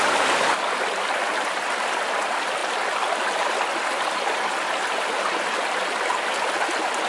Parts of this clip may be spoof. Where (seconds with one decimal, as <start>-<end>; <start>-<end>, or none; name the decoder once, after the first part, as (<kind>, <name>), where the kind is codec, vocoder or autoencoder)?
none